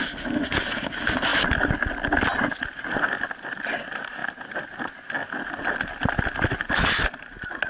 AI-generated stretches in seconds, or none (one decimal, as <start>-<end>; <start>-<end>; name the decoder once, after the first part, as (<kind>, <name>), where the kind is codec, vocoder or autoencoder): none

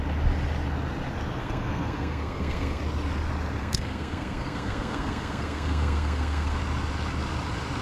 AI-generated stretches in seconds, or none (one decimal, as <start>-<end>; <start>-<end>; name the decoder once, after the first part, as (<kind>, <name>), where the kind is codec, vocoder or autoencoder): 1.4-2.8 (codec, SNAC); 3.6-6.6

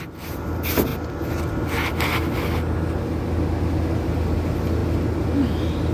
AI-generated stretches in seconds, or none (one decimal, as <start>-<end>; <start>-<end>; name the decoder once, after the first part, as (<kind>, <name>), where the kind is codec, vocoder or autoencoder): none

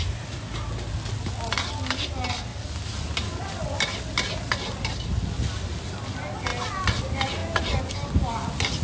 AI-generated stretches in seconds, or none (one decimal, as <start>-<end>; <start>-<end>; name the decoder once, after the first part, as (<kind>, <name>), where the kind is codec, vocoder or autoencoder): none